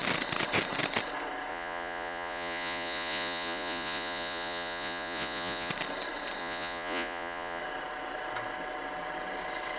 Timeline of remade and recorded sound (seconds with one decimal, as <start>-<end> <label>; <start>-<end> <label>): 0.0-1.5 recorded; 1.5-5.7 remade; 5.7-6.4 recorded; 6.4-7.6 remade; 7.6-9.8 recorded